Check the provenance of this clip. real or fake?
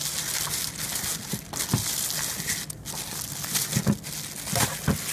real